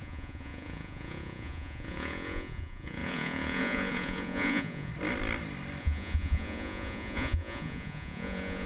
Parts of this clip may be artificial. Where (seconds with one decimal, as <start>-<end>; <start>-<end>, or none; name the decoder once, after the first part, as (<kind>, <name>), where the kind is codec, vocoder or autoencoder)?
0.0-4.9 (vocoder, Vocos); 5.8-8.7